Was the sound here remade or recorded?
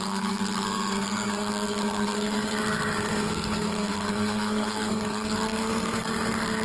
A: remade